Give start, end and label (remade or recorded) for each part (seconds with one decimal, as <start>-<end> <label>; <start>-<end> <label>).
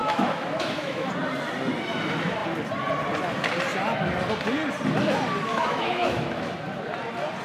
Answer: 0.0-1.1 remade; 1.1-5.5 recorded; 5.5-6.5 remade; 6.5-7.4 recorded